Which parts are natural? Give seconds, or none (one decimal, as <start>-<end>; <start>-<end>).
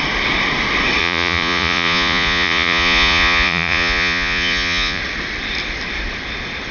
0.0-1.0; 5.0-6.7